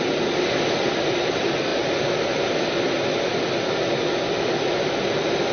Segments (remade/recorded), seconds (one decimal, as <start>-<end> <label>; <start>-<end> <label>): 0.0-5.5 recorded